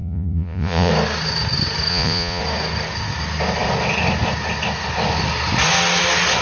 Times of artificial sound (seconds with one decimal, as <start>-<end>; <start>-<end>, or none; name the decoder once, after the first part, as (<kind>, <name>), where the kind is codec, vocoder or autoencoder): 0.0-0.9 (vocoder, Vocos); 1.9-2.4